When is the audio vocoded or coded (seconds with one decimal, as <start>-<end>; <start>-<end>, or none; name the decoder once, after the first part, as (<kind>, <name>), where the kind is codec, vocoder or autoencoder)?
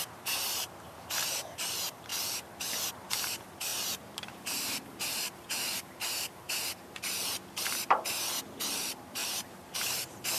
0.0-2.1 (vocoder, BigVGAN v2); 2.9-10.4